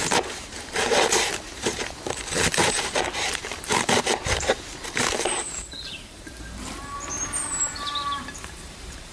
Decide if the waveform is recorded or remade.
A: remade